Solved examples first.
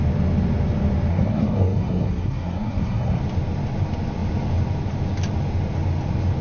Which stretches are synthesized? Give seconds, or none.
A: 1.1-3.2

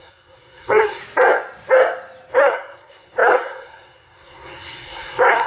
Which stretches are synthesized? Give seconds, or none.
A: 0.0-1.0; 2.3-5.5

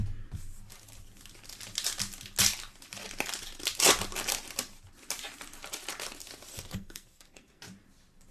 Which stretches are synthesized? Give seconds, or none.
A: 6.5-7.6

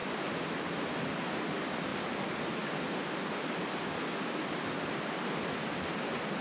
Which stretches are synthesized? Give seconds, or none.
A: none